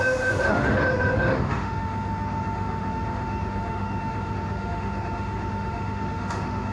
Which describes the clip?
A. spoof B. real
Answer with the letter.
A